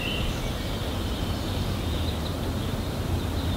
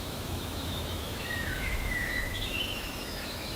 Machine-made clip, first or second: second